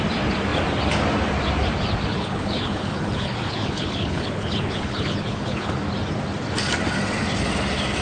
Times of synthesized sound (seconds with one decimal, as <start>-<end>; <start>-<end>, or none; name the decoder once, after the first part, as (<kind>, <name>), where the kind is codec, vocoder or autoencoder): 2.1-5.8 (codec, HILCodec)